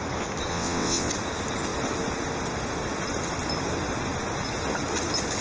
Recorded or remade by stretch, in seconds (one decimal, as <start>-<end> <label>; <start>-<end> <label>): 0.0-0.5 recorded; 0.5-1.1 remade; 1.1-5.4 recorded